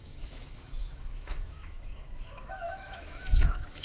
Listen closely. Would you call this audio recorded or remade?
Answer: remade